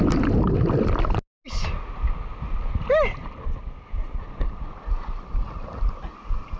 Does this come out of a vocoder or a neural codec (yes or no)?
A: no